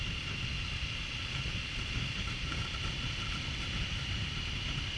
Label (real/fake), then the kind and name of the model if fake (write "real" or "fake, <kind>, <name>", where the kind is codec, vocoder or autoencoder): real